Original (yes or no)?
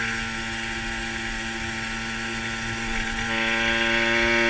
yes